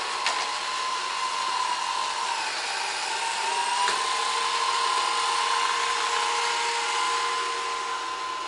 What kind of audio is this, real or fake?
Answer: real